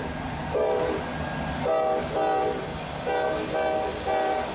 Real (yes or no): yes